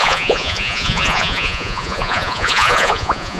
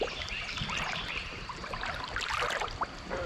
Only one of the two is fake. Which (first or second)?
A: first